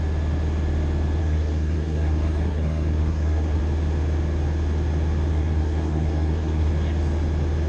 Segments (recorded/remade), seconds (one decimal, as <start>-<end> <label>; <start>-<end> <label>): 0.0-1.2 recorded; 1.2-3.6 remade; 3.6-5.3 recorded; 5.3-6.7 remade; 6.7-7.7 recorded